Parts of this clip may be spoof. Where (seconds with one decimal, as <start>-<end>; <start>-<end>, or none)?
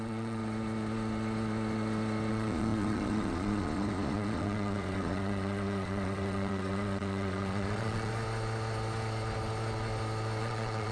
0.0-0.4; 2.3-8.1; 10.4-10.9